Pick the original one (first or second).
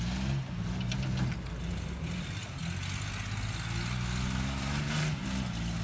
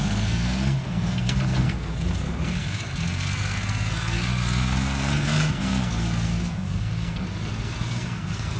first